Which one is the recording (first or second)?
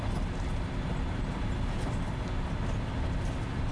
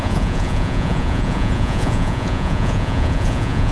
first